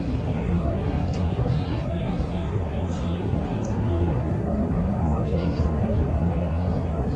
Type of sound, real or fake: fake